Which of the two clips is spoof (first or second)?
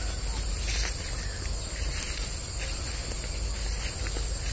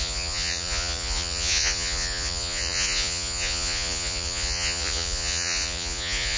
second